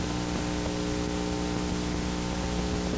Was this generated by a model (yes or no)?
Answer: no